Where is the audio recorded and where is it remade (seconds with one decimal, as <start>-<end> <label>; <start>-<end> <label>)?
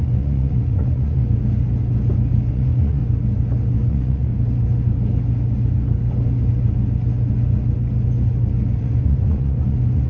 0.0-1.2 remade; 1.2-2.5 recorded; 2.5-3.0 remade; 3.0-3.9 recorded; 3.9-4.3 remade; 4.3-8.8 recorded; 8.8-10.1 remade